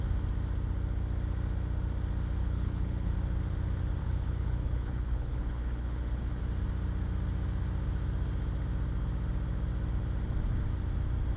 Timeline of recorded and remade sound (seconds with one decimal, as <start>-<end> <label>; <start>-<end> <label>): 0.0-2.4 recorded; 2.4-3.1 remade; 3.1-4.0 recorded; 4.0-6.4 remade; 6.4-11.4 recorded